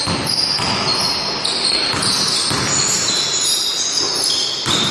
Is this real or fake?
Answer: real